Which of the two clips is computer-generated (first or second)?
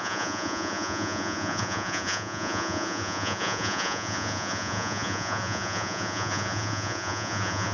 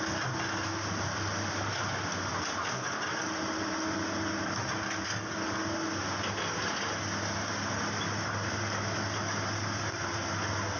first